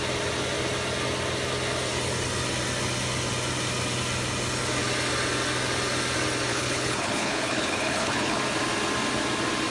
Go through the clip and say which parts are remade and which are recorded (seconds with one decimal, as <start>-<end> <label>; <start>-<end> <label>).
0.0-6.5 recorded; 6.5-8.4 remade; 8.4-9.7 recorded